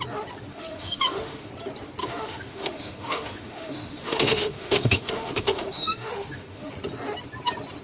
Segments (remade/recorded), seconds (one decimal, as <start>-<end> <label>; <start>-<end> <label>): 0.0-0.5 recorded; 0.5-1.5 remade; 1.5-2.0 recorded; 2.0-6.7 remade; 6.7-7.8 recorded